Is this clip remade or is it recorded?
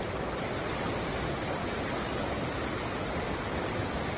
recorded